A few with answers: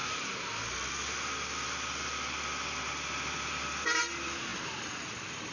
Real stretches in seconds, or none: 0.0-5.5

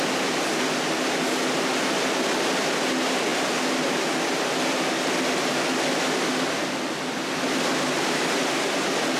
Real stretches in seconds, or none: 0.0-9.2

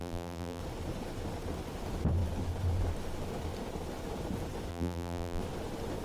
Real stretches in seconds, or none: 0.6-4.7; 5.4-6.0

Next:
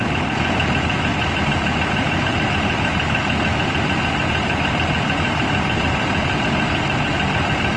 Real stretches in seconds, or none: 0.0-1.1; 2.3-7.8

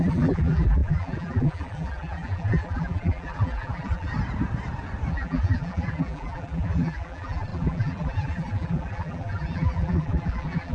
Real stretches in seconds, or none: 4.1-5.1